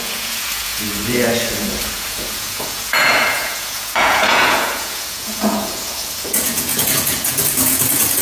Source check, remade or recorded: remade